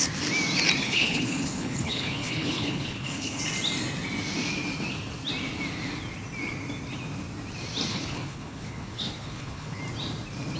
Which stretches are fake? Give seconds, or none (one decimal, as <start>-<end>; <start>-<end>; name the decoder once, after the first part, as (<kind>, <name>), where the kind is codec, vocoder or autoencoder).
0.8-3.4 (codec, HILCodec); 7.9-9.8